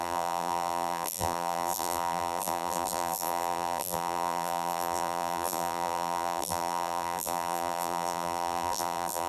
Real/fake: fake